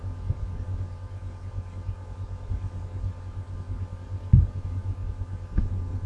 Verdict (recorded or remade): remade